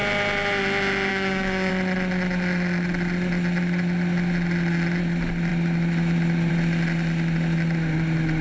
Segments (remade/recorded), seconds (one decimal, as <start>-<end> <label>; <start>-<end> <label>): 0.0-1.1 recorded; 1.1-1.7 remade; 1.7-8.4 recorded